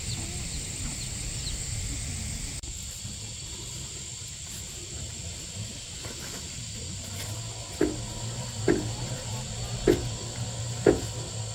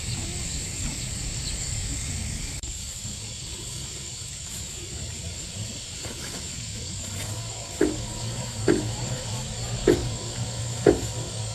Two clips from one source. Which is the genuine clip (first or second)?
first